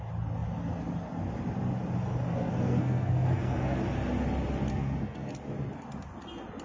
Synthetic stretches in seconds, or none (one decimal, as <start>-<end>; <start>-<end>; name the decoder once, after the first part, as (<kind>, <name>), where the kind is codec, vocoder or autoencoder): 2.4-3.8 (codec, SNAC); 4.7-5.3